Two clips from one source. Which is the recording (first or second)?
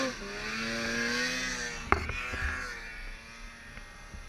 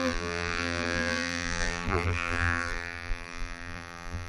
first